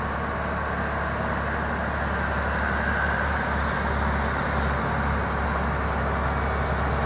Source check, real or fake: real